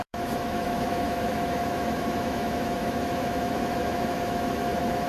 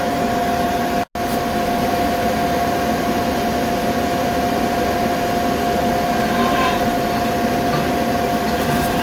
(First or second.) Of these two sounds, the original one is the second